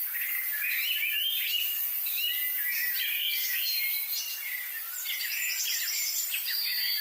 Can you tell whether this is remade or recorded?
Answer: recorded